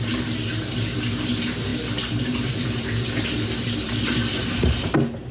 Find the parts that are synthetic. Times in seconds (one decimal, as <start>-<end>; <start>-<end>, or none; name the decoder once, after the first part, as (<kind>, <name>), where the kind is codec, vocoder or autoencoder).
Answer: none